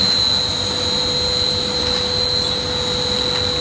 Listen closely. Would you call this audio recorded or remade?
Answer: recorded